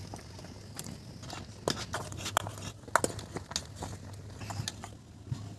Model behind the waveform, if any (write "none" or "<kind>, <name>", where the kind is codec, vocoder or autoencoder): none